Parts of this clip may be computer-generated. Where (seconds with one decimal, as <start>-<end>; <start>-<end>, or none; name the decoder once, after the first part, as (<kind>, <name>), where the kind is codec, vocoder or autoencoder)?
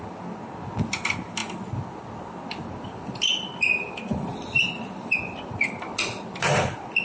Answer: none